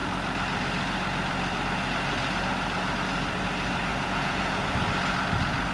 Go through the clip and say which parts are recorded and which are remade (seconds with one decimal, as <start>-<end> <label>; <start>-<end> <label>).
0.0-3.9 recorded; 3.9-4.7 remade; 4.7-5.7 recorded